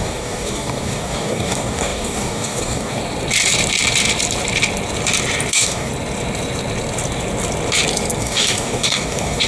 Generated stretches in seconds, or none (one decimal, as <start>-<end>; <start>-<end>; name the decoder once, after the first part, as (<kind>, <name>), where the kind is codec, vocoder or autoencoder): 0.0-3.0 (codec, DAC); 5.5-5.9; 8.2-9.5